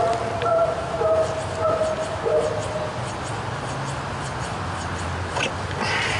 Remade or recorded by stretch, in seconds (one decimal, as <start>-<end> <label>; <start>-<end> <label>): 0.0-6.2 recorded